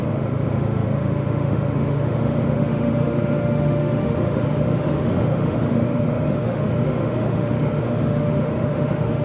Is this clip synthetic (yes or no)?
yes